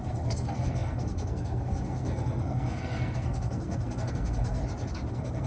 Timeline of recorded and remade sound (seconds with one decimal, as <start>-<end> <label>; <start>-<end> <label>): 0.0-4.6 remade; 4.6-5.1 recorded; 5.1-5.5 remade